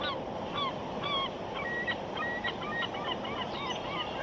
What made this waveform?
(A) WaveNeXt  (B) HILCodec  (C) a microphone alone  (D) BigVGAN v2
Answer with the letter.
C